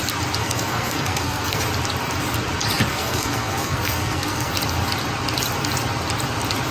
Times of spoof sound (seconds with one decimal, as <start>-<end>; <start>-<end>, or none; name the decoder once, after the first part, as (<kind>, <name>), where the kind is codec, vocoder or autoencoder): 0.4-1.6 (codec, SNAC); 2.9-4.5